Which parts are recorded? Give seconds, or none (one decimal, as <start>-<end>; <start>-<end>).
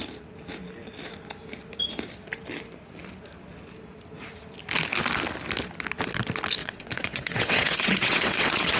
0.0-6.6